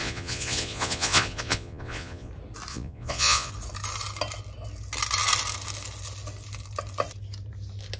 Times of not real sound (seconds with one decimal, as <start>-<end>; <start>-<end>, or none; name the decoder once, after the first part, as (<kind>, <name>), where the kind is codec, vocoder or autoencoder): 0.0-2.3 (vocoder, Vocos); 2.7-3.5